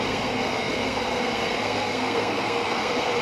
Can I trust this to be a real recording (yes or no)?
no